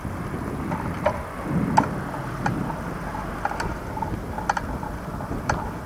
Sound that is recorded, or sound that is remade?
recorded